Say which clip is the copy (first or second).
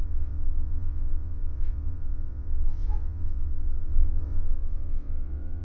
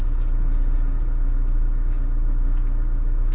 first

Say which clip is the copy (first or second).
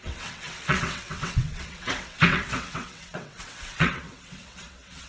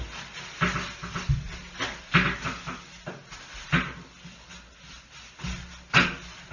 first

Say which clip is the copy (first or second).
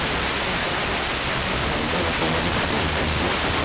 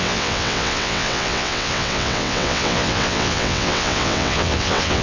second